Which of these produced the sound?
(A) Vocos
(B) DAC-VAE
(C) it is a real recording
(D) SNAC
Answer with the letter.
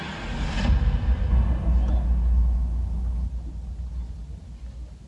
C